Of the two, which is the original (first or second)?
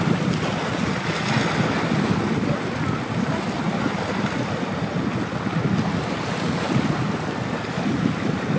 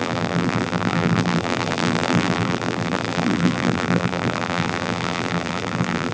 first